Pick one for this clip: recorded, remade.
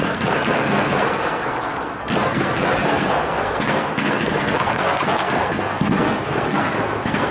remade